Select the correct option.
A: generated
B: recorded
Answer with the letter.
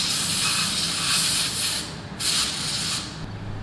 B